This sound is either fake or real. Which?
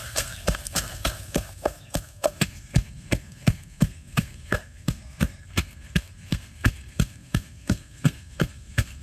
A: fake